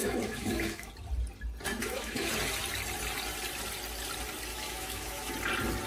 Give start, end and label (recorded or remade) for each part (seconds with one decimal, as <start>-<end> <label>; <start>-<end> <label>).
0.0-0.9 remade; 0.9-1.8 recorded; 1.8-2.3 remade; 2.3-4.5 recorded; 4.5-5.3 remade; 5.3-5.9 recorded